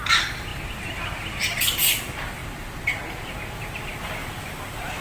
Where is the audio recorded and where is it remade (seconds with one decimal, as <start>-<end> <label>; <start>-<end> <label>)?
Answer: 0.0-4.2 recorded; 4.2-5.0 remade